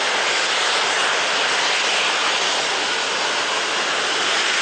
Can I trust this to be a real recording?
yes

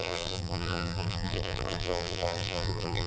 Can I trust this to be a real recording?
no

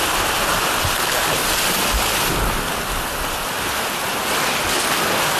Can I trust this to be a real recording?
yes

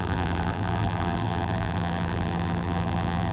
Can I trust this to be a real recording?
no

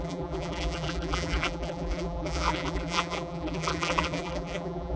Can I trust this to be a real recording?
no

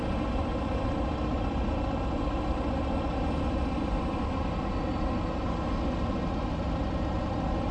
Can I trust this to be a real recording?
yes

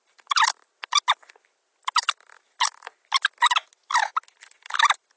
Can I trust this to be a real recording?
yes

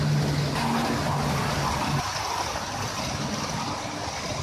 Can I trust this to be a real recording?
yes